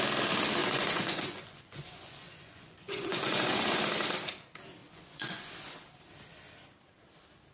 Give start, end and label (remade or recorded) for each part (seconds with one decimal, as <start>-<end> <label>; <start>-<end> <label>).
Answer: 0.0-0.6 recorded; 0.6-3.8 remade; 3.8-4.8 recorded; 4.8-5.5 remade; 5.5-7.5 recorded